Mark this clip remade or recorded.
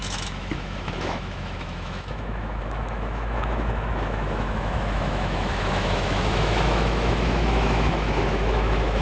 remade